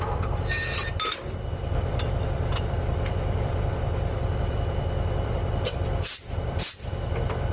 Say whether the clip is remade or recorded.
remade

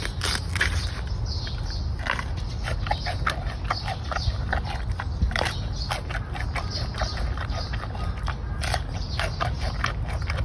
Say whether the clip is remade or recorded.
recorded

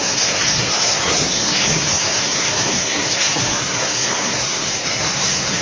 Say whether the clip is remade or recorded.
remade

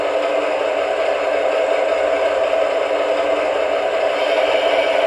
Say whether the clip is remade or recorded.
recorded